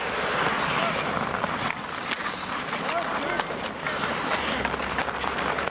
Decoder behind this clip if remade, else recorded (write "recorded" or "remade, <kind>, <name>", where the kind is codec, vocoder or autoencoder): recorded